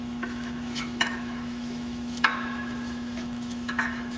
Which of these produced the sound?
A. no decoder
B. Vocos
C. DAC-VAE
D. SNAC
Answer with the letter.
C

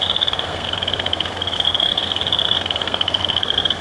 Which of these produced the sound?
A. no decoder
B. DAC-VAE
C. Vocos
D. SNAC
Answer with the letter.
D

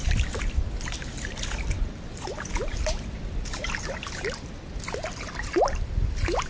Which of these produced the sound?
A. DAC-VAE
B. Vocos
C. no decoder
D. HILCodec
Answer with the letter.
C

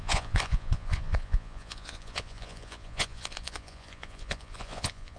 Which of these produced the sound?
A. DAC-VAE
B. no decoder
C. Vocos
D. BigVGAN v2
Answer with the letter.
C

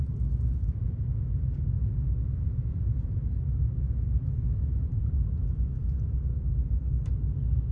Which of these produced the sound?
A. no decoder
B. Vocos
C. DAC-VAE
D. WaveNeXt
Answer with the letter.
A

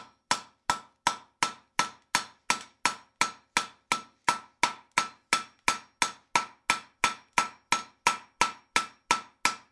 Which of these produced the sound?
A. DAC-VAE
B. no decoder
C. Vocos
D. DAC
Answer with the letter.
B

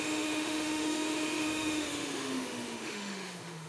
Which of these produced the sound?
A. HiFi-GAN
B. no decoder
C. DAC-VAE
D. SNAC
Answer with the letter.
C